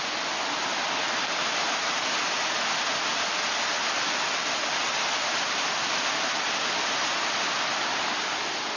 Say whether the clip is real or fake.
real